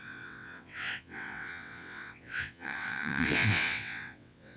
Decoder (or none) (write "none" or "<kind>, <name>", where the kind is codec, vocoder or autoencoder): vocoder, WaveNeXt